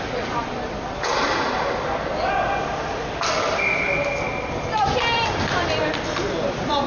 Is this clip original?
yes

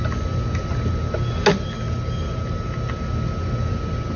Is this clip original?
yes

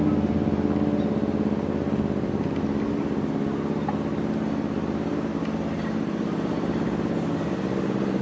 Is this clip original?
yes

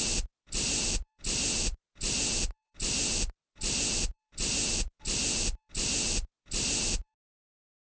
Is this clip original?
yes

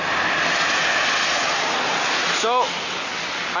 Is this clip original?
yes